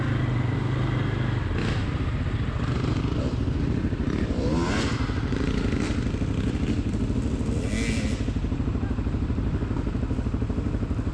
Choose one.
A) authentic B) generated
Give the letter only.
A